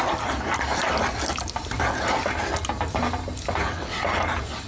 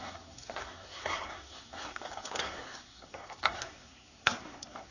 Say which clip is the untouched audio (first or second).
first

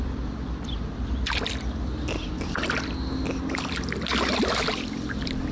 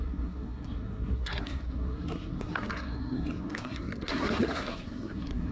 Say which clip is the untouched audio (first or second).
first